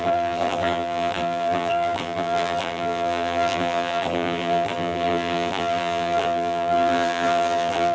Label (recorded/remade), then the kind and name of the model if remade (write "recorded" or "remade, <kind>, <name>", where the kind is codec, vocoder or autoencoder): remade, vocoder, BigVGAN v2